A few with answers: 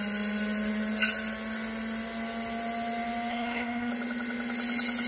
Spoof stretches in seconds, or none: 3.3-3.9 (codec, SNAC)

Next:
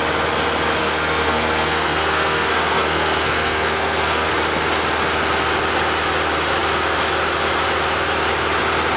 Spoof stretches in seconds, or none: 0.8-4.3 (codec, SNAC)